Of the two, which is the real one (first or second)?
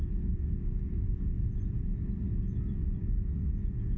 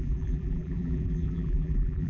first